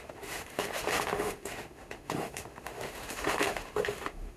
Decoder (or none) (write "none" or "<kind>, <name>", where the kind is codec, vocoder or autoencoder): autoencoder, DAC-VAE